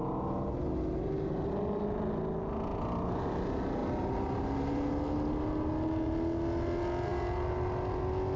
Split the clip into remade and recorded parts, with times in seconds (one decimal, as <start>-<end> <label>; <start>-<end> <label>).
0.0-8.4 recorded